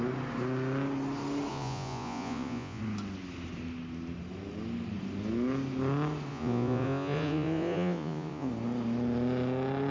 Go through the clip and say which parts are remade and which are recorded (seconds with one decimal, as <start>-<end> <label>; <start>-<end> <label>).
0.0-1.5 recorded; 1.5-2.8 remade; 2.8-6.3 recorded; 6.3-8.5 remade; 8.5-9.9 recorded